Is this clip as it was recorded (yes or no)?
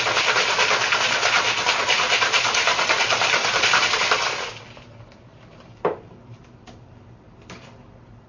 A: no